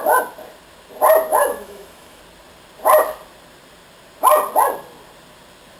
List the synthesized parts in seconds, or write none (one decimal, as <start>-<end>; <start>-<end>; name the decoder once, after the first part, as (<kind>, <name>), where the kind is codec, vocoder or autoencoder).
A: 1.3-2.2 (autoencoder, DAC-VAE)